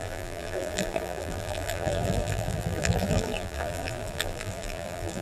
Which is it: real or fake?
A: fake